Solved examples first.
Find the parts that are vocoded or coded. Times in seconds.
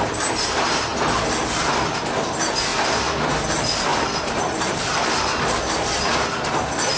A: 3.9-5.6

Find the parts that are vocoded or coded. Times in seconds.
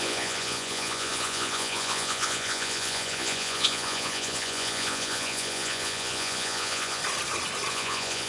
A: 0.0-7.0; 7.7-8.3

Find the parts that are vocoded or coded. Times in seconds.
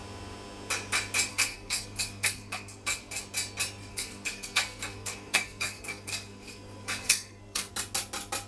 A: 1.3-3.2; 3.9-7.7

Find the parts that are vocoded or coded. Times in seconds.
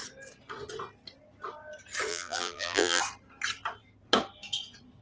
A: 2.1-3.0